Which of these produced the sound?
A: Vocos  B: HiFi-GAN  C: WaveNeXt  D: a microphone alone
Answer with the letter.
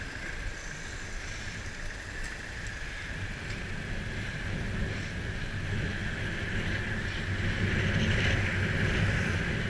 D